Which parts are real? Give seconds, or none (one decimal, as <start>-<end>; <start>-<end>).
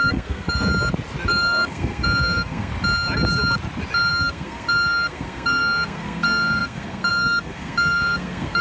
0.7-1.3; 2.7-4.1